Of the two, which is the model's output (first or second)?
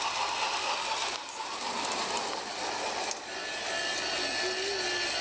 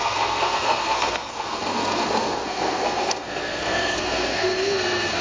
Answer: second